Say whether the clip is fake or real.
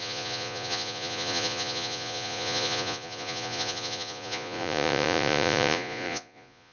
fake